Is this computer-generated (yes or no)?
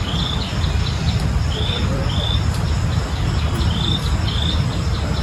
no